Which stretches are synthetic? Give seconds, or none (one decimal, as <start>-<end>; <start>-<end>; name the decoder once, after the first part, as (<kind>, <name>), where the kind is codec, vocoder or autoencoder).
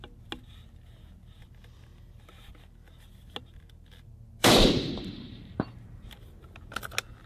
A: 4.4-6.1 (vocoder, BigVGAN v2)